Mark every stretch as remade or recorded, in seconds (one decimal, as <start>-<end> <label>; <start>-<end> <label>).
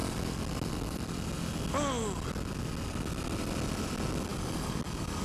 0.0-5.2 recorded